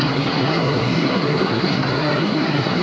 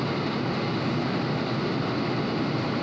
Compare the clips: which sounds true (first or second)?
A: second